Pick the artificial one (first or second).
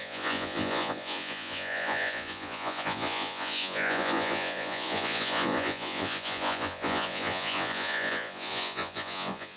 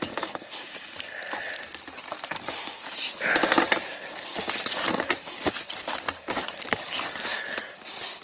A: first